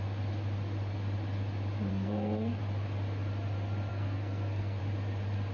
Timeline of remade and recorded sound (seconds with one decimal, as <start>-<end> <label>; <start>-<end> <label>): 0.0-1.9 recorded; 1.9-2.6 remade; 2.6-3.9 recorded; 3.9-4.8 remade; 4.8-5.5 recorded